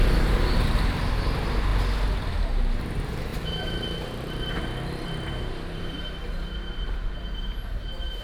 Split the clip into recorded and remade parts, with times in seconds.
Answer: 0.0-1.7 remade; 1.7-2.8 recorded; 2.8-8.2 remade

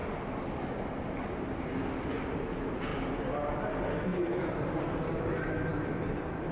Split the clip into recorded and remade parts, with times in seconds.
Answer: 0.0-4.1 recorded; 4.1-5.0 remade; 5.0-6.5 recorded

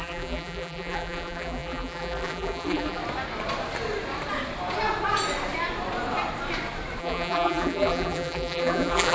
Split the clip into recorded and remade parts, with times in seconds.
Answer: 0.0-3.0 remade; 3.0-7.0 recorded; 7.0-9.1 remade

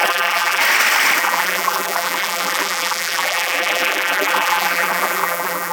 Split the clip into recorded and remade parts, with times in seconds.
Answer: 0.0-0.6 remade; 0.6-1.2 recorded; 1.2-5.7 remade

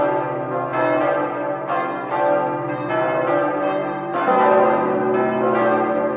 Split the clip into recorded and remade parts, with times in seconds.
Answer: 0.0-6.2 recorded

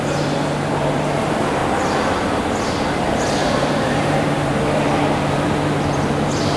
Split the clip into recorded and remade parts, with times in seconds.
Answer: 0.0-1.6 remade; 1.6-2.8 recorded; 2.8-6.6 remade

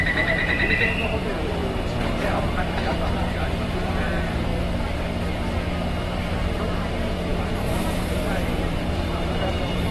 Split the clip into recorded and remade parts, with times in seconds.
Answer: 0.0-1.6 remade; 1.6-2.2 recorded; 2.2-4.5 remade; 4.5-6.3 recorded; 6.3-9.9 remade

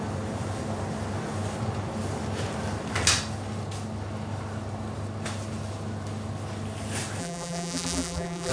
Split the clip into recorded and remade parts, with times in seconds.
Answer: 0.0-7.2 recorded; 7.2-8.5 remade